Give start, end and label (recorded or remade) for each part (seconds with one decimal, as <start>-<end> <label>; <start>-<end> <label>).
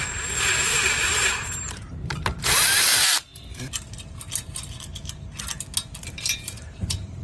0.0-2.9 remade; 2.9-6.1 recorded; 6.1-7.2 remade